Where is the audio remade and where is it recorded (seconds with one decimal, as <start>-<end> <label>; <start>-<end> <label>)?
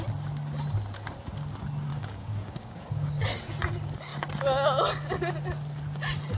0.0-1.9 recorded; 1.9-3.3 remade; 3.3-6.4 recorded